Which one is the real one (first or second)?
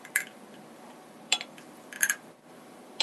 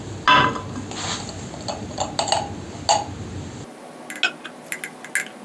second